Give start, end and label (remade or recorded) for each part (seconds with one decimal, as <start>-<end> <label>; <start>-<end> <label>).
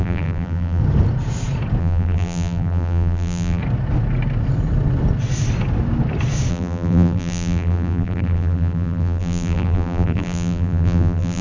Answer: 0.0-0.8 remade; 0.8-1.8 recorded; 1.8-3.6 remade; 3.6-6.5 recorded; 6.5-11.4 remade